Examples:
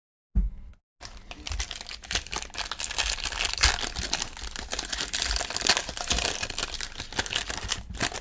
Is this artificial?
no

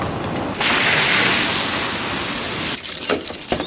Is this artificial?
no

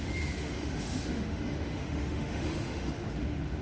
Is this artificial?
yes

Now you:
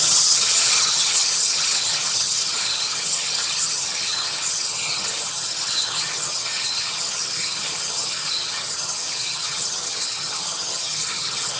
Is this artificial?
yes